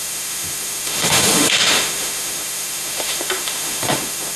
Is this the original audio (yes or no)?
no